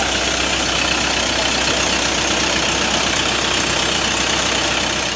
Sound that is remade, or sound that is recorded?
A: recorded